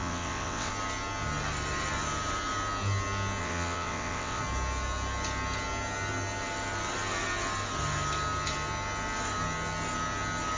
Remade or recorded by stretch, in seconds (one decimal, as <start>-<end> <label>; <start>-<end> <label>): 0.0-0.7 remade; 0.7-3.4 recorded; 3.4-4.4 remade; 4.4-10.6 recorded